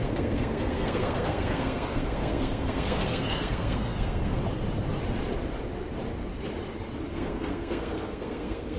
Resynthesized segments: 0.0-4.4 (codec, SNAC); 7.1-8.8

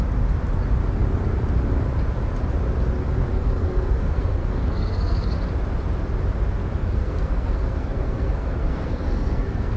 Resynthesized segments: 3.3-5.3 (codec, SNAC); 6.8-9.8